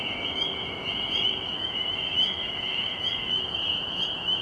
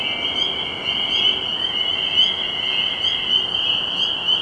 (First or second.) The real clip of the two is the second